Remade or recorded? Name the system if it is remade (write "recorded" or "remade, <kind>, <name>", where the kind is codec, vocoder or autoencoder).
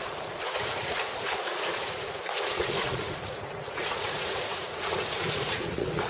remade, vocoder, Vocos